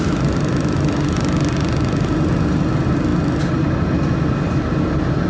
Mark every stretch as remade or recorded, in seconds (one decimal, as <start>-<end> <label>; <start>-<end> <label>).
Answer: 0.0-5.3 recorded